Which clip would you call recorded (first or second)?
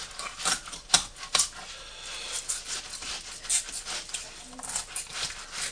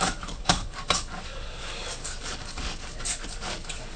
first